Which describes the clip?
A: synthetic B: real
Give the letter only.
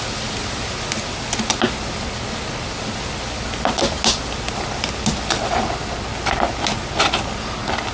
B